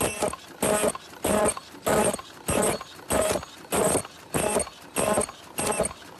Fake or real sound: real